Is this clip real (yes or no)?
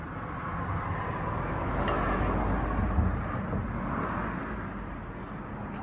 yes